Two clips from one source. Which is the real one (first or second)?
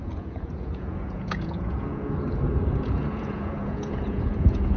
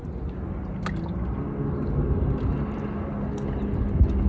second